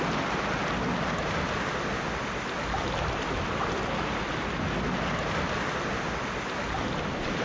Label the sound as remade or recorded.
recorded